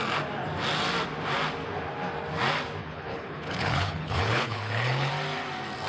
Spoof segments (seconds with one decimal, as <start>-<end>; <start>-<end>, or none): 2.8-5.1